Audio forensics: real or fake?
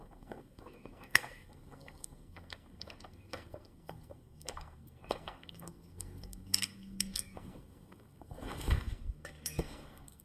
fake